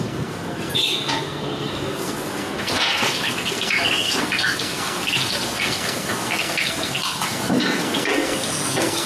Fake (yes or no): yes